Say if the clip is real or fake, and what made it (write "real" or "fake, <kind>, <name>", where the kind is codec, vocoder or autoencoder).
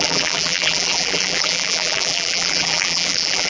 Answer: fake, vocoder, BigVGAN v2